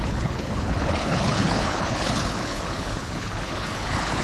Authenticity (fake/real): fake